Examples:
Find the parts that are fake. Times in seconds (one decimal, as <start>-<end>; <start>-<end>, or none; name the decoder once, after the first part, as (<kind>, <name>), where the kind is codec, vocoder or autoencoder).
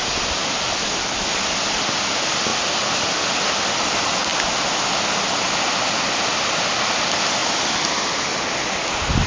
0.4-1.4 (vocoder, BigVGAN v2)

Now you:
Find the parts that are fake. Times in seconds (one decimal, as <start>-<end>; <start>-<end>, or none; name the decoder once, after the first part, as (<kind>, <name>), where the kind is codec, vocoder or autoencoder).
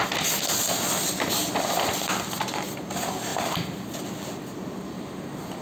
none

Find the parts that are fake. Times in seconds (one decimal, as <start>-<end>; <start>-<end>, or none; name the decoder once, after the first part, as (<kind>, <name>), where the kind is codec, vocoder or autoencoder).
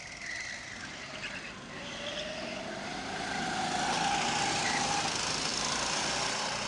5.5-6.7 (vocoder, BigVGAN v2)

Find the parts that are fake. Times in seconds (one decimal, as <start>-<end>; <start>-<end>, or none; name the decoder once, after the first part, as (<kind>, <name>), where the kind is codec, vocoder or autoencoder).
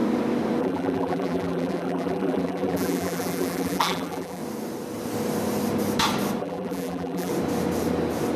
0.6-4.4 (vocoder, BigVGAN v2); 6.4-7.3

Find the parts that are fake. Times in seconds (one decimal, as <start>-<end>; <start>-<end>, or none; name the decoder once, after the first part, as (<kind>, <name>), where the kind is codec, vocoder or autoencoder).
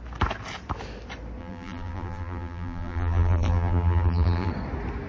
1.4-4.5 (vocoder, BigVGAN v2)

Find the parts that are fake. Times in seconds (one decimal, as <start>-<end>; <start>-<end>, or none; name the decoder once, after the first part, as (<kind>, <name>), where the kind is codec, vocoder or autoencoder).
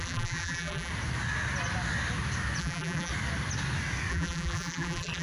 0.0-0.9 (vocoder, BigVGAN v2); 2.6-3.1; 4.1-5.2